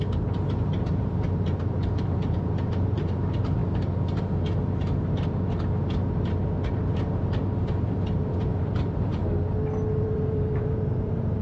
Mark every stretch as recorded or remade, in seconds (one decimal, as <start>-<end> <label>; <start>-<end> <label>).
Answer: 0.0-3.6 remade; 3.6-6.7 recorded; 6.7-9.2 remade; 9.2-9.9 recorded; 9.9-11.4 remade